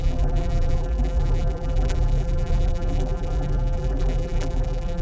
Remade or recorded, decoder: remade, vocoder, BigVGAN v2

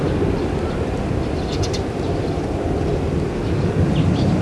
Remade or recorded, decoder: recorded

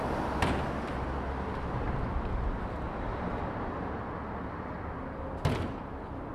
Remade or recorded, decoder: recorded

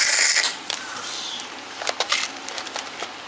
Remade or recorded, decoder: remade, vocoder, BigVGAN v2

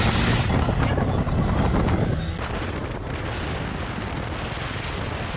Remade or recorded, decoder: recorded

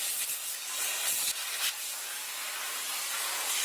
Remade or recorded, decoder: recorded